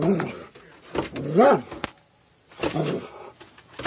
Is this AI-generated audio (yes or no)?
no